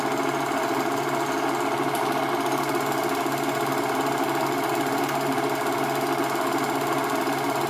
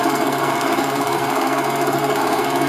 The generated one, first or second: second